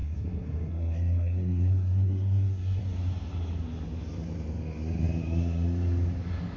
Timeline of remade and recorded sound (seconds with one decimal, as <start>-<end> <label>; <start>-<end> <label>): 0.0-2.8 remade; 2.8-6.6 recorded